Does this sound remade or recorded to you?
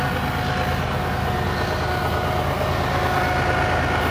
recorded